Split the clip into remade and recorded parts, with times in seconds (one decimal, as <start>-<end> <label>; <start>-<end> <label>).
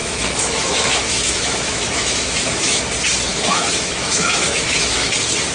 0.0-2.8 remade; 2.8-3.3 recorded; 3.3-5.1 remade; 5.1-5.5 recorded